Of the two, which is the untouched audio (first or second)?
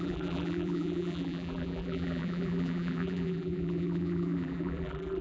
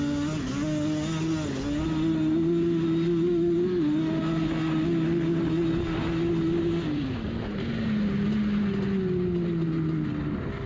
second